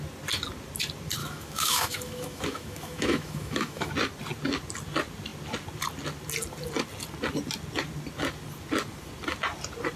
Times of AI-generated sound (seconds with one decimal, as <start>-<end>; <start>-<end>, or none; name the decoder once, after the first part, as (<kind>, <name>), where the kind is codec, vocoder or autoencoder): 1.2-3.9 (autoencoder, DAC-VAE)

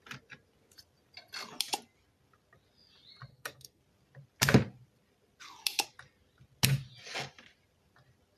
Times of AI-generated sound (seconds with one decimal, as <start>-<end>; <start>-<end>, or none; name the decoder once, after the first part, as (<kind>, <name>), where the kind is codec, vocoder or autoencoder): 3.3-3.8 (codec, SNAC)